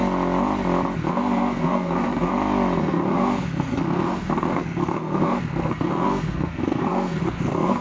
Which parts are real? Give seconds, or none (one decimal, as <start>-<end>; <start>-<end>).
0.0-1.1; 2.3-2.8

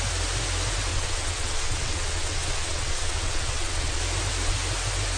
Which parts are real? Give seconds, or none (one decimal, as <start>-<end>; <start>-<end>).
0.0-0.9; 4.0-5.2

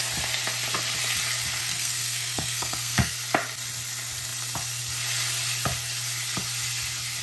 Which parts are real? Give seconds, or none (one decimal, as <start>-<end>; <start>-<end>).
0.0-1.6; 3.1-7.2

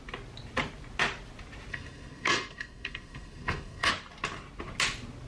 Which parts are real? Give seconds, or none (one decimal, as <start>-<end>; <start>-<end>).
0.0-1.7; 3.9-5.3

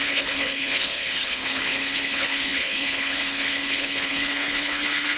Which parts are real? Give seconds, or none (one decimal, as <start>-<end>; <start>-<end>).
none

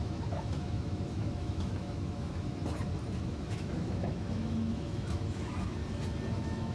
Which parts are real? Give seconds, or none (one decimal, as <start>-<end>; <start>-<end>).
2.6-3.2; 5.8-6.3

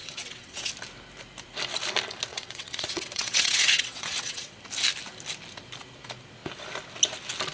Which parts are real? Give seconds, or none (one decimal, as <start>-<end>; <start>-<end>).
0.7-2.3; 4.6-7.5